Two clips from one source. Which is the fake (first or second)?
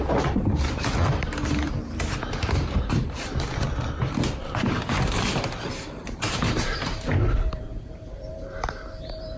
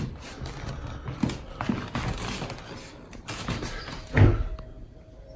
first